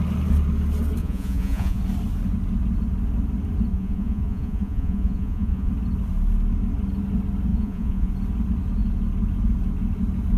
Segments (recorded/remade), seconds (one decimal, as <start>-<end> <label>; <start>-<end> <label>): 0.0-1.0 recorded; 1.0-1.8 remade; 1.8-3.7 recorded; 3.7-5.7 remade; 5.7-7.5 recorded; 7.5-8.1 remade; 8.1-10.4 recorded